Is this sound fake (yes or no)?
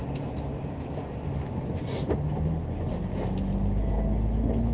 no